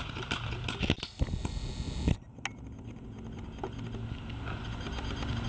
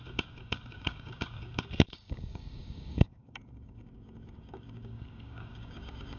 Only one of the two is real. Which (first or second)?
first